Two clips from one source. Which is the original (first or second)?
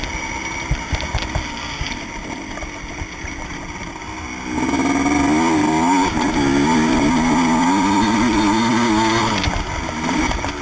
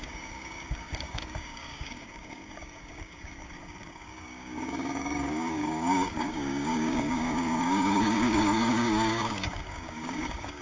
first